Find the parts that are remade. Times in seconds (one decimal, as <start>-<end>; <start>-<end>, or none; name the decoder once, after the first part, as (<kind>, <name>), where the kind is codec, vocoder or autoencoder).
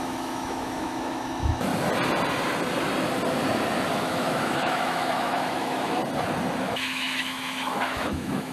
0.0-1.7 (autoencoder, DAC-VAE); 3.9-6.0; 6.6-8.5